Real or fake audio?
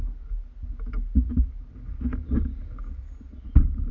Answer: real